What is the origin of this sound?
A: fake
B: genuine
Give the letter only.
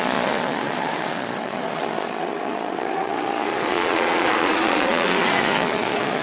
A